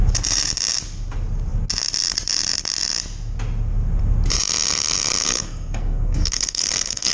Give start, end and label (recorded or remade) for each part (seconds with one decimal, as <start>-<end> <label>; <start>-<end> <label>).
0.0-5.2 recorded; 5.2-7.1 remade